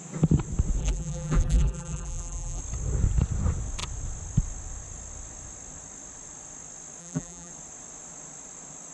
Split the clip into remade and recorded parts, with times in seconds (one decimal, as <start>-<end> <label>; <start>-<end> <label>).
0.0-0.8 recorded; 0.8-2.6 remade; 2.6-7.0 recorded; 7.0-7.5 remade; 7.5-8.9 recorded

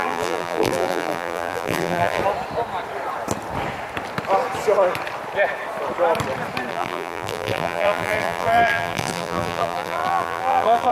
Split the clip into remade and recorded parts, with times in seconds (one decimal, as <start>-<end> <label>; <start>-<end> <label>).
0.0-2.2 remade; 2.2-6.7 recorded; 6.7-10.9 remade

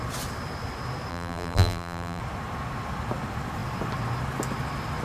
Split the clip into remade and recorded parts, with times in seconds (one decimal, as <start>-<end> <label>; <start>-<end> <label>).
0.0-1.1 recorded; 1.1-2.2 remade; 2.2-5.0 recorded

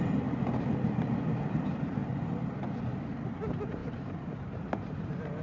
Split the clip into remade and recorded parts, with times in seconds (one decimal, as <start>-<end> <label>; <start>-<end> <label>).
0.0-3.8 recorded; 3.8-5.4 remade

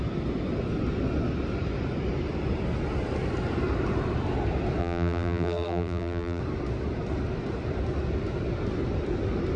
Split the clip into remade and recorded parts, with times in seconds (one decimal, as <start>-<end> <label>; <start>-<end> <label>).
0.0-4.8 recorded; 4.8-6.4 remade; 6.4-9.6 recorded

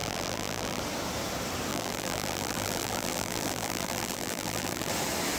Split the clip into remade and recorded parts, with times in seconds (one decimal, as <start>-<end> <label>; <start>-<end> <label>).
0.0-0.8 remade; 0.8-1.7 recorded; 1.7-4.9 remade; 4.9-5.4 recorded

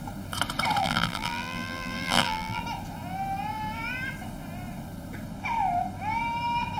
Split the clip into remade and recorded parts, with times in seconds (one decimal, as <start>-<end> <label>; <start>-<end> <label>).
0.0-0.8 recorded; 0.8-2.6 remade; 2.6-6.8 recorded